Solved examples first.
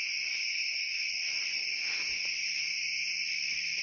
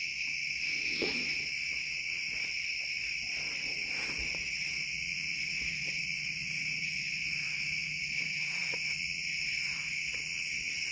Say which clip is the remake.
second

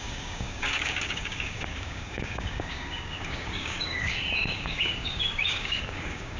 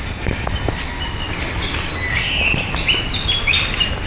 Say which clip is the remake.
first